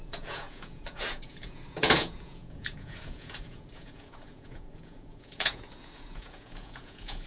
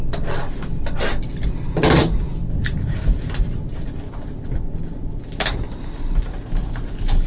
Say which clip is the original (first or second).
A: second